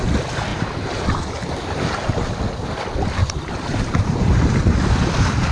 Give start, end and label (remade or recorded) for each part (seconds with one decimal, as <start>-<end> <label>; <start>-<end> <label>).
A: 0.0-0.5 recorded; 0.5-2.4 remade; 2.4-3.2 recorded; 3.2-4.4 remade; 4.4-5.5 recorded